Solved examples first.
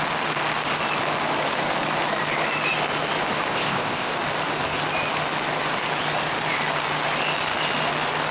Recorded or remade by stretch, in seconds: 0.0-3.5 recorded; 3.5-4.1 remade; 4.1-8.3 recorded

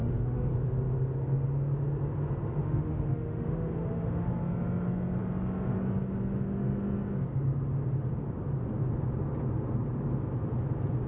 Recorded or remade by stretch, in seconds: 0.0-0.5 remade; 0.5-2.6 recorded; 2.6-4.3 remade; 4.3-11.1 recorded

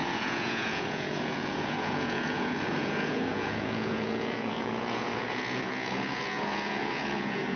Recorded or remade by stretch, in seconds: 0.0-7.6 remade